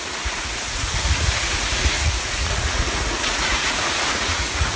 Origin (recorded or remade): remade